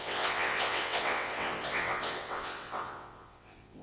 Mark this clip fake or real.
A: fake